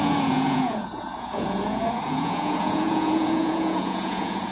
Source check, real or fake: fake